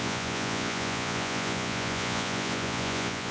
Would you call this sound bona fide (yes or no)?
no